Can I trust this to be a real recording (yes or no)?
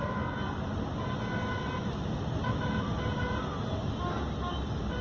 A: yes